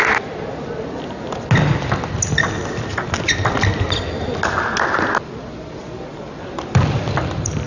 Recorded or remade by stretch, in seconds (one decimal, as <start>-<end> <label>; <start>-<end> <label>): 0.0-7.7 recorded